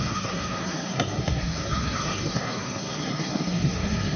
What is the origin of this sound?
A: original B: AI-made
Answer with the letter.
B